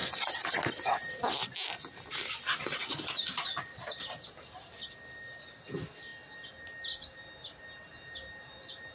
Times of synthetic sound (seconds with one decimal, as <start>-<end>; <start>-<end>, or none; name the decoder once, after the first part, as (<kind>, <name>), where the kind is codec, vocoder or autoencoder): none